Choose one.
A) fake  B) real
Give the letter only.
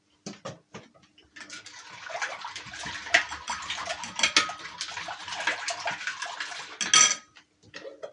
B